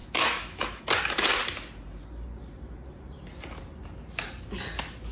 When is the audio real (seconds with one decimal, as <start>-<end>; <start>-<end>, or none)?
0.8-5.1